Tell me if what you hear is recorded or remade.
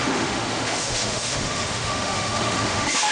remade